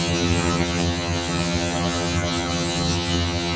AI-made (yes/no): yes